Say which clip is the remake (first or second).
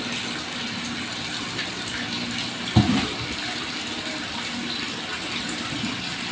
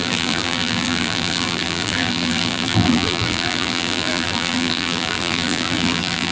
second